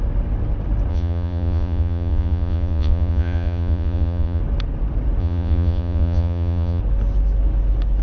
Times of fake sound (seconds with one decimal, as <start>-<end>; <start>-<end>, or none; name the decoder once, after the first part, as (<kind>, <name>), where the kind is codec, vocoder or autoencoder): 0.9-4.4 (vocoder, Vocos); 5.2-6.8